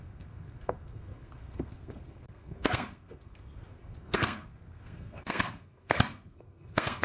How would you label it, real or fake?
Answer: fake